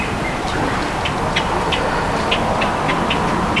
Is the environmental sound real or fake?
real